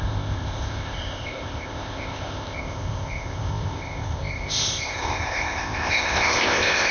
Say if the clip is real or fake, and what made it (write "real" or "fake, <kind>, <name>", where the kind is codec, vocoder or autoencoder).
fake, codec, ZipCodec